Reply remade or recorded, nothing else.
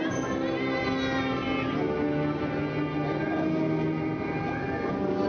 recorded